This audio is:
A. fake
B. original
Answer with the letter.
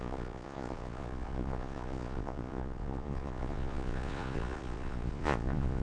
A